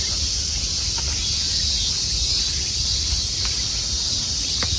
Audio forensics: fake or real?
real